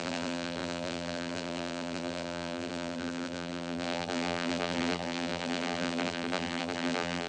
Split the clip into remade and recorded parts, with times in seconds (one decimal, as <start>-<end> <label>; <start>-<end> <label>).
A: 0.0-7.3 remade